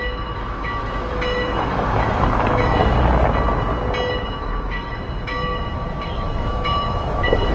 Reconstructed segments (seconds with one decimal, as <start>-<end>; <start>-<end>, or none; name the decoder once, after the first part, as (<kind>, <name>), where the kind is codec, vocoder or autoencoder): 0.0-2.8 (autoencoder, DAC-VAE); 4.1-7.5